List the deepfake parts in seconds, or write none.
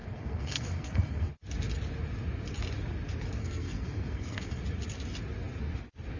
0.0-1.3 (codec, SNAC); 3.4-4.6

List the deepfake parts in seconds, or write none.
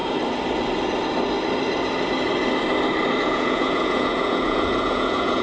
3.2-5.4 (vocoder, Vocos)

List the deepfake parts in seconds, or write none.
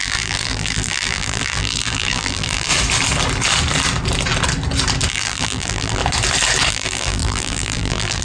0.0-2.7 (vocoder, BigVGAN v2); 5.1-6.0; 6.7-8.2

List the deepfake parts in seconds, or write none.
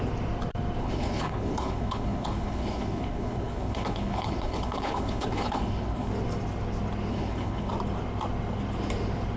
0.8-6.1 (codec, HILCodec); 7.1-7.7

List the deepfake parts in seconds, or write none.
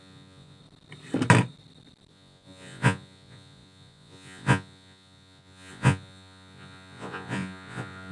0.0-0.6 (vocoder, Vocos); 2.1-8.1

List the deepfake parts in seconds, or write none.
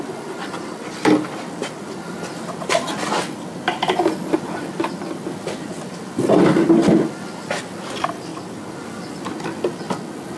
none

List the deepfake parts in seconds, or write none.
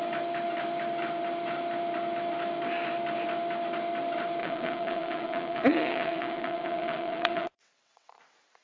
4.4-8.2 (vocoder, WaveNeXt)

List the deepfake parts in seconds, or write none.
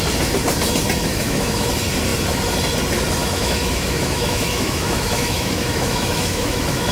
1.1-1.7 (autoencoder, DAC-VAE); 3.2-6.9